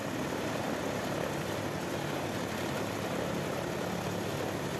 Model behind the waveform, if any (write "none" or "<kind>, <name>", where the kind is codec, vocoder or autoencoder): none